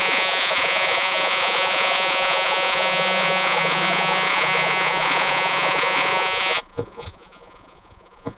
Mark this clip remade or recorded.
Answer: remade